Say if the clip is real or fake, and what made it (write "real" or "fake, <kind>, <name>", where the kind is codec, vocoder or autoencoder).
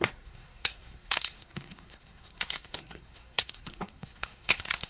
fake, codec, SNAC